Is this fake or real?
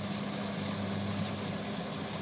real